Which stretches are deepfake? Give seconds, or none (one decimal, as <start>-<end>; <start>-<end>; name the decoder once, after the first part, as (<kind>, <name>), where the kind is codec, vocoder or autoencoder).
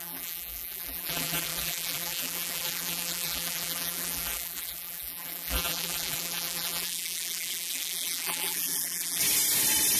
0.0-9.2 (vocoder, BigVGAN v2)